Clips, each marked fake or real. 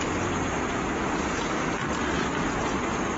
real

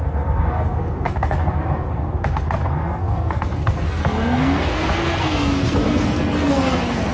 fake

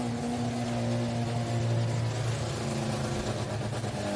real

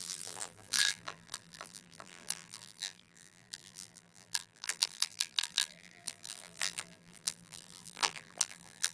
fake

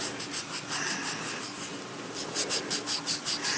real